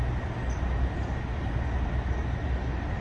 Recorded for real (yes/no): yes